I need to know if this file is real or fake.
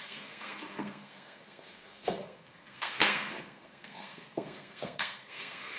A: fake